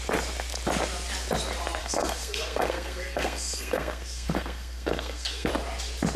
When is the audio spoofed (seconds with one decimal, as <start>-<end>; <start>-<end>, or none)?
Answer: 1.8-5.5